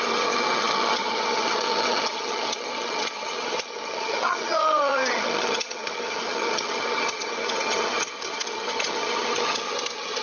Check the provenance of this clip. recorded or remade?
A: remade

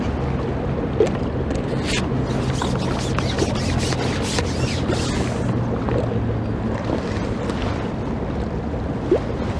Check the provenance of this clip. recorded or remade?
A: recorded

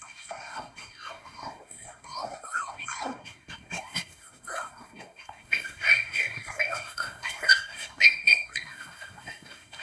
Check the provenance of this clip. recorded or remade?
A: remade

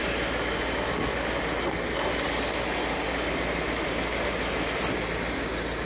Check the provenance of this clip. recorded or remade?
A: recorded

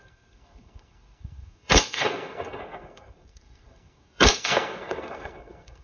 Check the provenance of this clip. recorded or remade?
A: remade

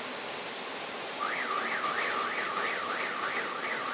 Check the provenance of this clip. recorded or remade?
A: recorded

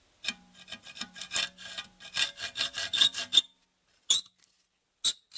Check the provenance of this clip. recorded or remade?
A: recorded